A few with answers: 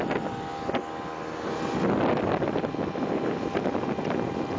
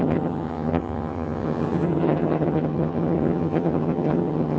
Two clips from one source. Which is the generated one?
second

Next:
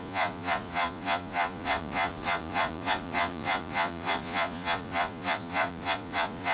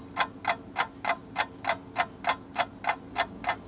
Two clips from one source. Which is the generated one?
first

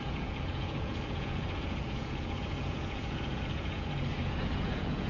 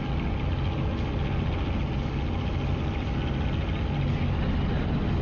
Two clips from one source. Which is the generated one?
first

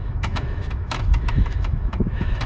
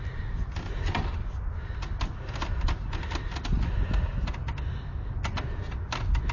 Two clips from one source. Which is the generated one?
first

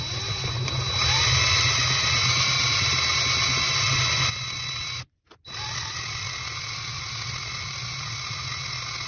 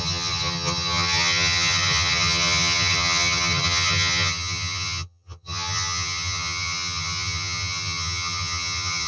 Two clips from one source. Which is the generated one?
second